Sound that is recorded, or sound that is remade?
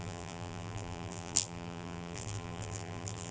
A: remade